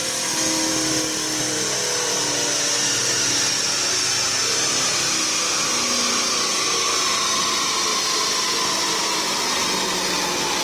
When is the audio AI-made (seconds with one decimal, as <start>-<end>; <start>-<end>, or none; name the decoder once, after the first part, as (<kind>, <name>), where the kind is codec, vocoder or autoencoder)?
none